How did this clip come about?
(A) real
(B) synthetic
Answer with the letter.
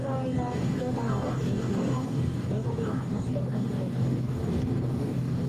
B